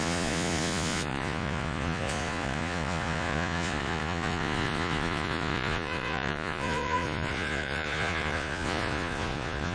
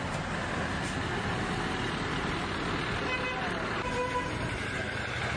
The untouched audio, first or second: second